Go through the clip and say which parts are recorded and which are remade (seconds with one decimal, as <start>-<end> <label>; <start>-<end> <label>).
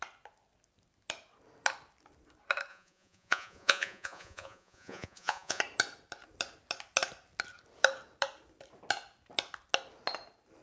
0.0-2.7 recorded; 2.7-5.6 remade; 5.6-10.6 recorded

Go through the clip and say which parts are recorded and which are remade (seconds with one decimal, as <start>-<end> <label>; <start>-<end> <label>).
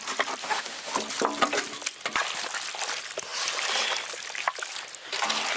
0.0-0.4 recorded; 0.4-0.9 remade; 0.9-5.6 recorded